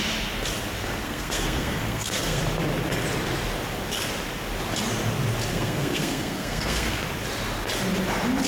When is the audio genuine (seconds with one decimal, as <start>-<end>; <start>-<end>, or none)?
0.0-1.0; 2.4-5.5; 7.0-8.5